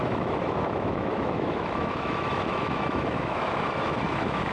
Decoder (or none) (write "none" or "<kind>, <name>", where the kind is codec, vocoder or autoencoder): autoencoder, DAC-VAE